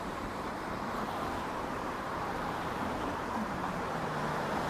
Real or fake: fake